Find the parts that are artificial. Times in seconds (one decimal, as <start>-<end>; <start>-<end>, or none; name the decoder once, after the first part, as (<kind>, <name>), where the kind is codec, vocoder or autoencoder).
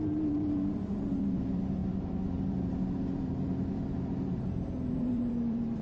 0.0-5.8 (vocoder, BigVGAN v2)